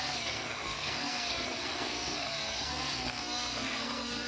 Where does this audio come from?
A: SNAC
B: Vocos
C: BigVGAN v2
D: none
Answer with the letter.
A